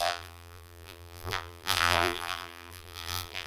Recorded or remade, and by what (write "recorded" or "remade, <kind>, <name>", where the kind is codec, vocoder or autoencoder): remade, vocoder, BigVGAN v2